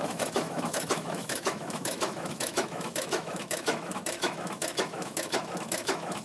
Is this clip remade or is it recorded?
remade